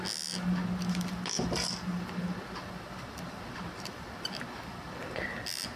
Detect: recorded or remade recorded